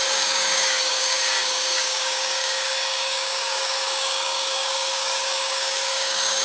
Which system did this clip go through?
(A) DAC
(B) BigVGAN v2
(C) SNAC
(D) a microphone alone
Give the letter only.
A